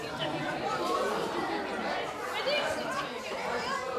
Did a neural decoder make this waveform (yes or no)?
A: yes